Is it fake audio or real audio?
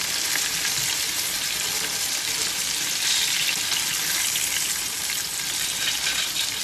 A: real